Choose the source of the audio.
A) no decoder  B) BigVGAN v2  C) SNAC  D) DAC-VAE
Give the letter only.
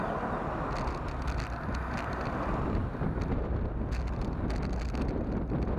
A